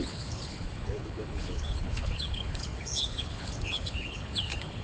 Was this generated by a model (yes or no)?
yes